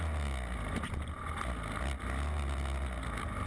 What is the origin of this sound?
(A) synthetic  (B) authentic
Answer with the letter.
B